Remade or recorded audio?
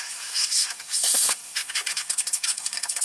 remade